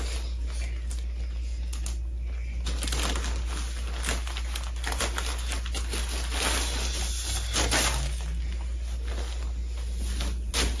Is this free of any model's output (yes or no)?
yes